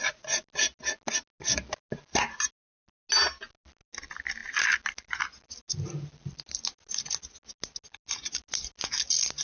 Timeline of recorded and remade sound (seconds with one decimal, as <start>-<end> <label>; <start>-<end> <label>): 0.0-9.4 recorded